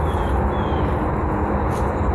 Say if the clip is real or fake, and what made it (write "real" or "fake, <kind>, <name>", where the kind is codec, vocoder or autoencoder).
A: real